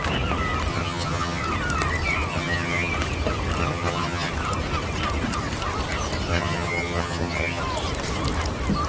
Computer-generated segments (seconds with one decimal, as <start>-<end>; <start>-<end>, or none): 0.7-1.4; 2.3-2.9; 3.6-4.3; 6.3-7.6